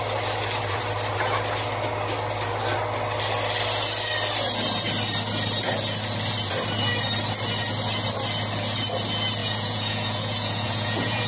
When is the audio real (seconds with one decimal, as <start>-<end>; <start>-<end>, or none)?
0.0-9.4